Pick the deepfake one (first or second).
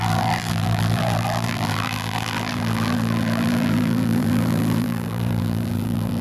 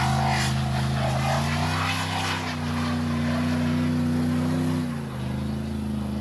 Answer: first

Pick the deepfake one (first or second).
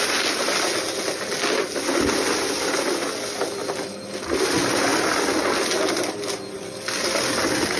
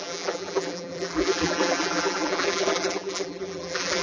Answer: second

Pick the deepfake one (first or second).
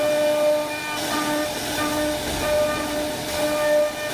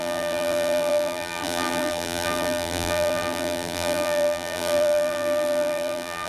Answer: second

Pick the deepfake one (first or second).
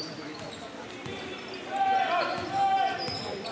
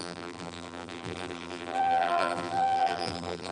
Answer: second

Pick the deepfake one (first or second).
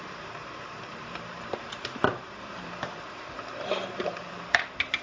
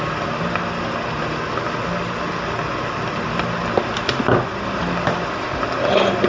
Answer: first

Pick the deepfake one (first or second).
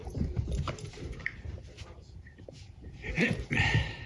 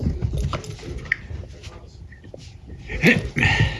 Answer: first